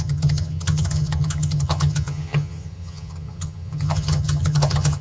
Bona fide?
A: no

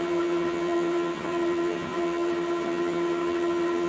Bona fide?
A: no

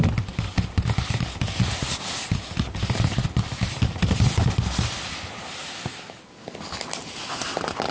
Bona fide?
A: yes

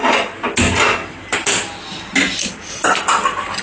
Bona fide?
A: yes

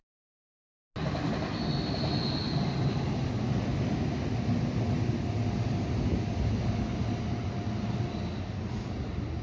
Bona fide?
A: yes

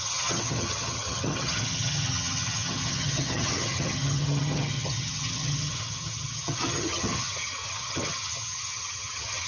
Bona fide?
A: no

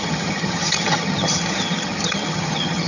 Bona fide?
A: no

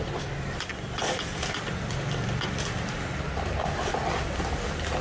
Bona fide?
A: yes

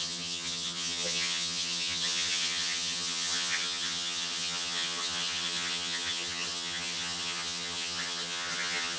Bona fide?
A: no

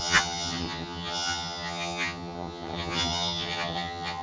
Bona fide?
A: no